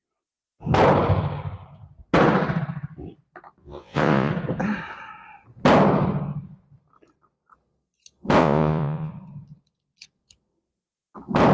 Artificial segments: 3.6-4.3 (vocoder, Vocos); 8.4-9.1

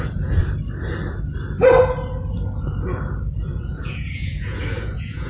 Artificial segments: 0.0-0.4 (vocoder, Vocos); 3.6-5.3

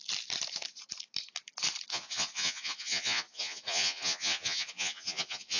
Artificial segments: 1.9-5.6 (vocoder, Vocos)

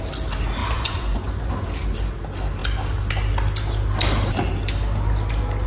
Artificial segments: 0.6-1.5 (vocoder, Vocos)

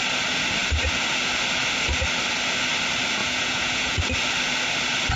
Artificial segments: 3.2-4.0 (vocoder, Vocos)

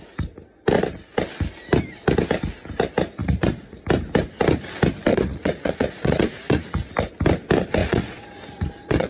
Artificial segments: 3.2-3.8 (vocoder, Vocos); 5.1-6.9; 7.8-9.1

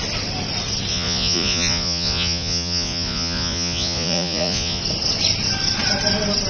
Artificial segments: 0.9-4.8 (vocoder, Vocos)

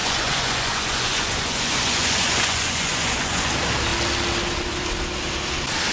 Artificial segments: 0.0-3.5 (vocoder, Vocos)